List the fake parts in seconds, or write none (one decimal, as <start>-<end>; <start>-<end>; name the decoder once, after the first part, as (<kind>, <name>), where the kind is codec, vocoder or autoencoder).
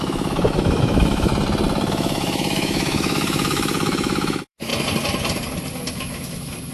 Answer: 0.0-1.3 (autoencoder, DAC-VAE); 1.9-4.7; 5.9-6.7